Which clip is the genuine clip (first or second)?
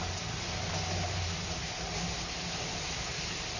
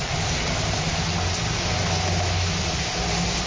second